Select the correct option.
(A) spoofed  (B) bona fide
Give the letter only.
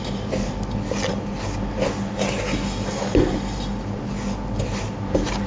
B